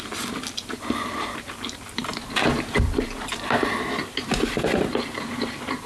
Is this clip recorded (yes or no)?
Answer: yes